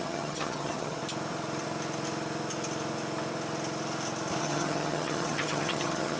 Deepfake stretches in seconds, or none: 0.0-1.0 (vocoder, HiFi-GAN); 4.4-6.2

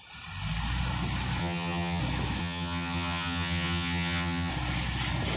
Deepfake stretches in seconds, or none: 1.4-2.0 (vocoder, HiFi-GAN); 2.4-4.5